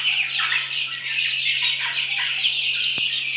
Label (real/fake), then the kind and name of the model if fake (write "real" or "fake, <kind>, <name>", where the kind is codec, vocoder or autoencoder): real